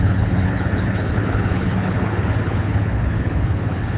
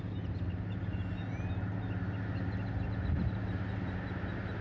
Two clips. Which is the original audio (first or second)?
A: second